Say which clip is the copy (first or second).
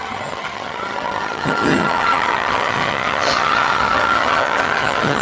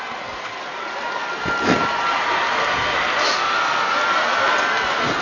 first